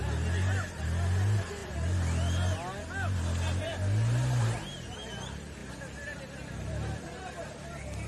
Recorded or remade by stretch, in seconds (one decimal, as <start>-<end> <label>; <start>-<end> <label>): 0.0-8.1 recorded